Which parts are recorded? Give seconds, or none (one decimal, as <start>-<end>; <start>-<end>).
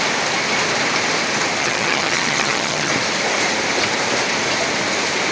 0.0-1.6; 2.9-5.3